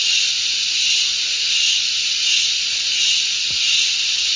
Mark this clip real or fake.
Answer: real